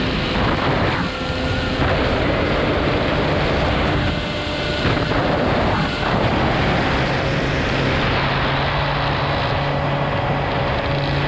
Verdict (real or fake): real